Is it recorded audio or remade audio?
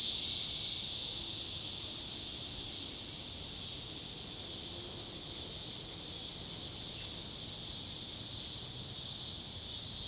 recorded